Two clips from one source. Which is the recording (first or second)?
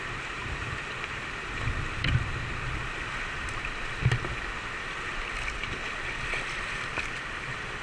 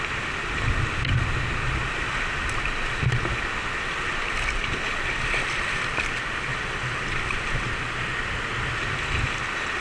second